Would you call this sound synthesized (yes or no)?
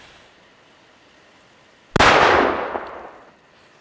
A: no